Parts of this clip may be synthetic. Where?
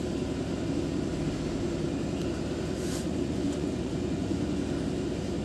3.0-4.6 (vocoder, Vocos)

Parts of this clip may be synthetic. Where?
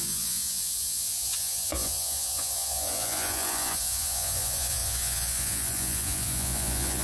0.0-7.0 (vocoder, Vocos)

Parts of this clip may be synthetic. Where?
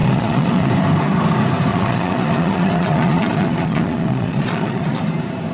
0.0-0.7 (vocoder, Vocos); 1.7-5.0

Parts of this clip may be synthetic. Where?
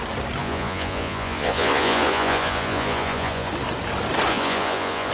0.4-3.5 (vocoder, Vocos); 4.3-5.1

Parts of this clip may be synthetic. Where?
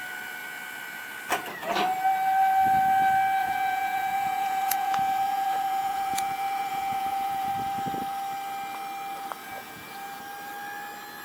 3.4-7.5 (vocoder, Vocos); 9.4-10.2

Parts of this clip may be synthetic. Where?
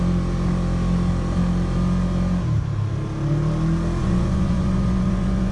4.0-5.5 (vocoder, Vocos)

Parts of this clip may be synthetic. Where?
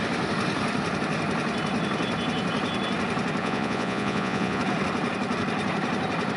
3.4-4.6 (vocoder, Vocos)